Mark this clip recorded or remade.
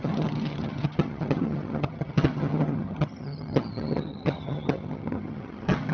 remade